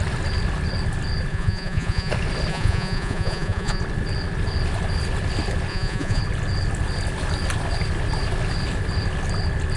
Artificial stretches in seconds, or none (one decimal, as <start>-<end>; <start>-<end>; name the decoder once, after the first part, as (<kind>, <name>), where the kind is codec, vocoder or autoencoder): 1.3-2.1 (vocoder, Vocos); 2.5-3.8; 5.7-6.2